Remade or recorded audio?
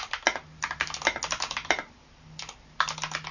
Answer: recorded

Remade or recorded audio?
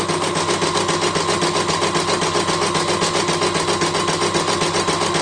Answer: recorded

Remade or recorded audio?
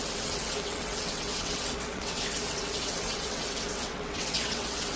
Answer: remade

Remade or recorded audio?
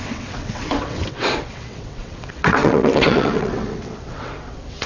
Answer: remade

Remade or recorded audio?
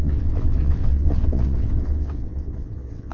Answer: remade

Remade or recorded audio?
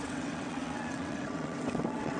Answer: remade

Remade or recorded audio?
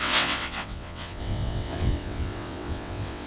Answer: remade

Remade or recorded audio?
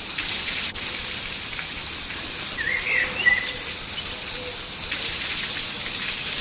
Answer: recorded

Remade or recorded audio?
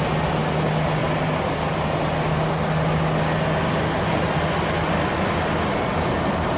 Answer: recorded